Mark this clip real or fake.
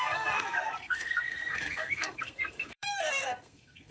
fake